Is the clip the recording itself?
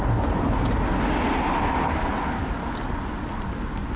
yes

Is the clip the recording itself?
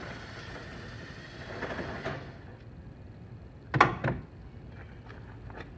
yes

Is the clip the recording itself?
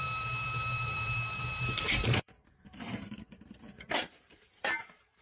no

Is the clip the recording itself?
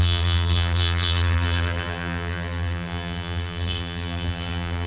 no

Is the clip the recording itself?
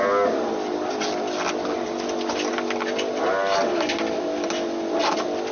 yes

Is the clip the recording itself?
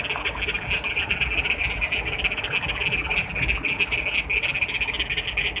yes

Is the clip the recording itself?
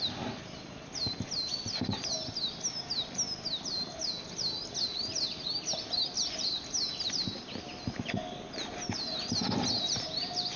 yes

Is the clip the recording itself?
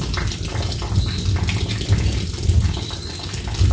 yes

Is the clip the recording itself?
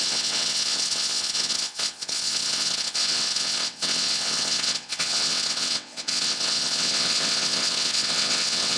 no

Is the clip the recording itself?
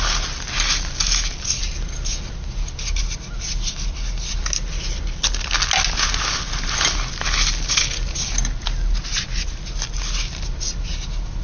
yes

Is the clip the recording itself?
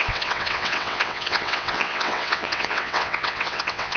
no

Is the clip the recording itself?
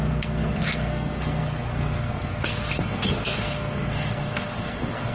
no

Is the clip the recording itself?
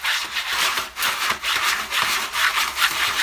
no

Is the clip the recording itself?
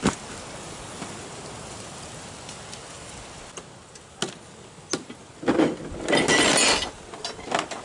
yes